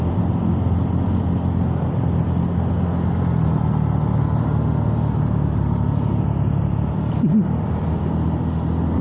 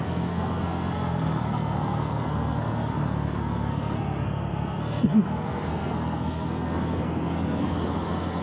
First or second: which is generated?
second